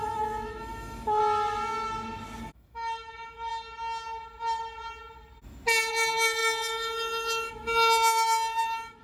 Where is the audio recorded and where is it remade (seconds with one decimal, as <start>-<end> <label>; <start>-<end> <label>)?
0.0-1.2 remade; 1.2-2.4 recorded; 2.4-3.5 remade; 3.5-5.9 recorded; 5.9-9.0 remade